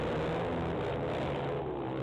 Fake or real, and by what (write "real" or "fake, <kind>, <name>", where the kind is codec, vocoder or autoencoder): real